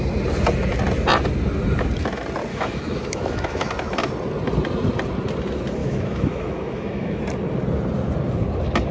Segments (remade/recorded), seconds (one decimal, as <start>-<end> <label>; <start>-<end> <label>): 0.0-2.5 recorded; 2.5-3.7 remade; 3.7-5.8 recorded; 5.8-7.2 remade; 7.2-8.9 recorded